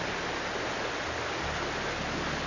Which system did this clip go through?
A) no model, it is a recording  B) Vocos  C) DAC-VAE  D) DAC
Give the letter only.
A